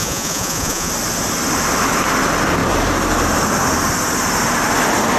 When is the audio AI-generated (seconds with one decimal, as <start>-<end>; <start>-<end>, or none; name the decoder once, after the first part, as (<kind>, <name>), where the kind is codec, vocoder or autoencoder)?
0.0-0.9 (vocoder, Vocos)